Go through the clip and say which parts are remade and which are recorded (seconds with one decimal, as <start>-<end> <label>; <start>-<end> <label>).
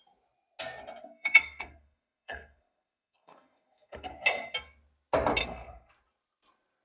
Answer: 0.0-1.0 recorded; 1.0-4.1 remade; 4.1-5.4 recorded; 5.4-5.9 remade; 5.9-6.8 recorded